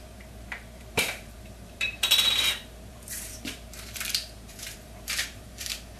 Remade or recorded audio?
remade